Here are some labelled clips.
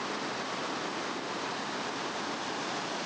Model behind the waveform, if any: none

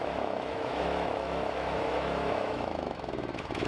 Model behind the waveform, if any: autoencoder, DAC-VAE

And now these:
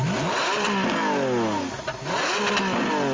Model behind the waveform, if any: none